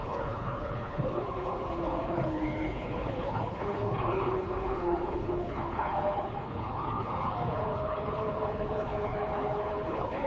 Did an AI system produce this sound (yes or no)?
yes